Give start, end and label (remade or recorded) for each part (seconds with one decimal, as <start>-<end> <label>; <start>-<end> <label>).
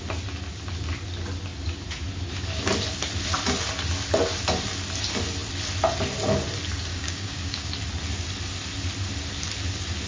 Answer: 0.0-6.9 recorded; 6.9-7.7 remade; 7.7-10.1 recorded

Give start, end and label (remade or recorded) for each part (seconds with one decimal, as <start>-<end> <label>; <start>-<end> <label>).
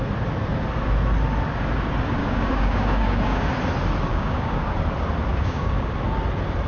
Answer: 0.0-2.2 recorded; 2.2-3.5 remade; 3.5-4.1 recorded; 4.1-4.7 remade; 4.7-5.3 recorded; 5.3-5.9 remade; 5.9-6.7 recorded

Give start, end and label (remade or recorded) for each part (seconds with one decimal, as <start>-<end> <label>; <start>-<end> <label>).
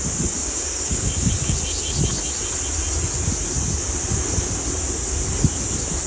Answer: 0.0-0.4 recorded; 0.4-1.3 remade; 1.3-6.1 recorded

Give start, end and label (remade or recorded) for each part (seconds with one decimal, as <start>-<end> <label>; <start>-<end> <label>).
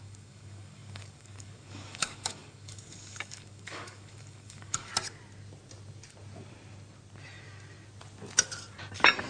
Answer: 0.0-4.9 remade; 4.9-9.3 recorded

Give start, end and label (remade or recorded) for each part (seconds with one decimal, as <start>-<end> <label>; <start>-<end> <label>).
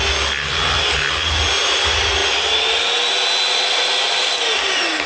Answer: 0.0-5.1 recorded